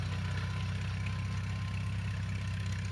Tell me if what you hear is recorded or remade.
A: recorded